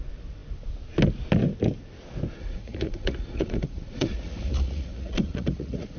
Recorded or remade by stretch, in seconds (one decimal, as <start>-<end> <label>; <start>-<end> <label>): 0.0-2.4 recorded; 2.4-6.0 remade